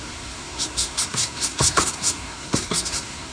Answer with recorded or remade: remade